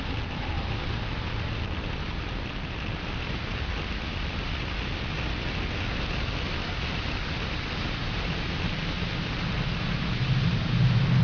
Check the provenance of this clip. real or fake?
real